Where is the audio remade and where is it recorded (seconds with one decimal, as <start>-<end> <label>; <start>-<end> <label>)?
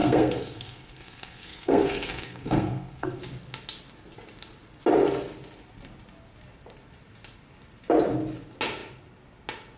0.0-3.2 remade; 3.2-9.8 recorded